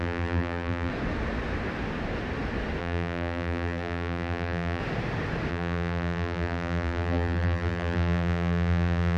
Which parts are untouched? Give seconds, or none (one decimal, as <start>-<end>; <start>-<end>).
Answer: 0.9-2.8; 4.8-5.5